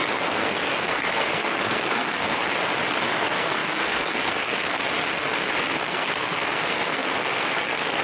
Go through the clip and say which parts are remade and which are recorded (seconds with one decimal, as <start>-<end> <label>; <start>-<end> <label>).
0.0-2.4 remade; 2.4-3.0 recorded; 3.0-4.8 remade; 4.8-5.6 recorded; 5.6-8.0 remade